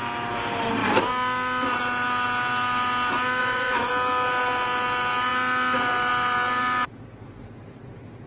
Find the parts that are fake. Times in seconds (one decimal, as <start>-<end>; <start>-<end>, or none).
3.4-3.9

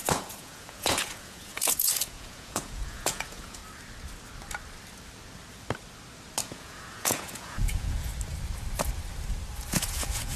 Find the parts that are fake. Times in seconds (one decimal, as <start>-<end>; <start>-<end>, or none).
0.0-3.6; 6.4-8.1; 9.7-10.4

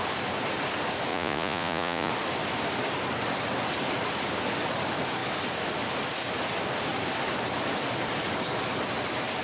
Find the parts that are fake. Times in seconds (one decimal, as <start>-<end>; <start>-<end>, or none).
1.1-2.1

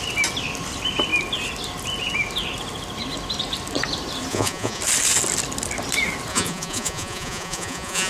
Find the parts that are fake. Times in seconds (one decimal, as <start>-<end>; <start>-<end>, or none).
4.3-4.8; 6.3-8.1

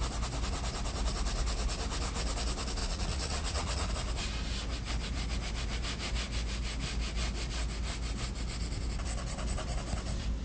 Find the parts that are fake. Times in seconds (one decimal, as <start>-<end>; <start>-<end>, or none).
2.8-3.9